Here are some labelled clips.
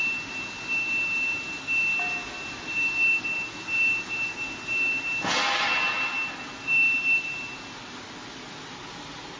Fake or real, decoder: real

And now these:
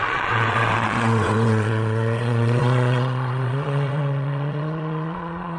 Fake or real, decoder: fake, vocoder, Vocos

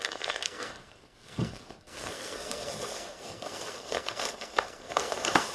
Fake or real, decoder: fake, codec, SNAC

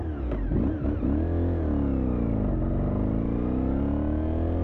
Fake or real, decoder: real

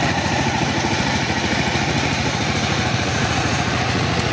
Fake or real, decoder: fake, vocoder, Vocos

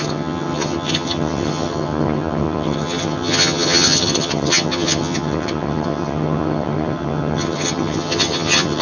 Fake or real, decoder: fake, vocoder, HiFi-GAN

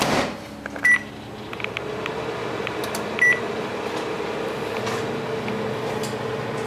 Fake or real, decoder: real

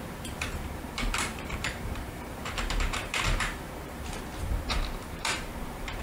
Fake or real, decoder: fake, vocoder, BigVGAN v2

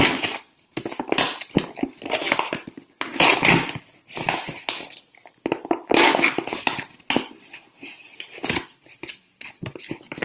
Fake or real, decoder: real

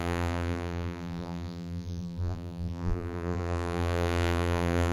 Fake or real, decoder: fake, vocoder, BigVGAN v2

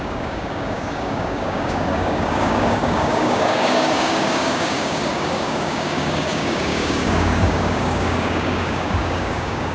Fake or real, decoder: fake, codec, DAC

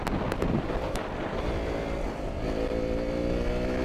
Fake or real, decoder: real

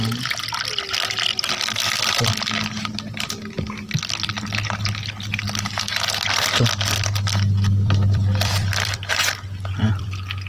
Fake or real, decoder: fake, vocoder, BigVGAN v2